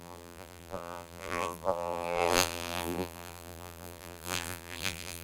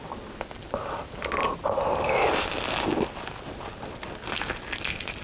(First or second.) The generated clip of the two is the first